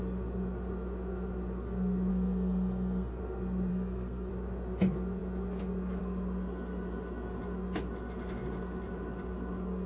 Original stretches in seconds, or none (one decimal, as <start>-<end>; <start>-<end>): 0.0-2.1; 3.2-3.7; 4.3-9.9